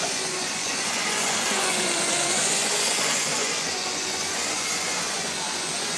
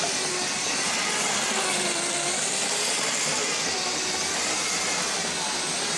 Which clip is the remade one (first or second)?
first